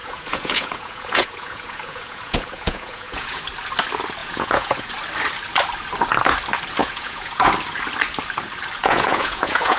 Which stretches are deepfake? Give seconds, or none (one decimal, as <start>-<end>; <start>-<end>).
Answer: 0.0-3.4; 4.2-4.9; 6.8-7.5; 8.8-9.8